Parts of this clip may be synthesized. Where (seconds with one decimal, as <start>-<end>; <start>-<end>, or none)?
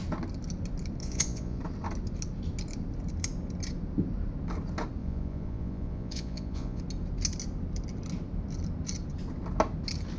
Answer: 1.0-1.6; 5.0-6.8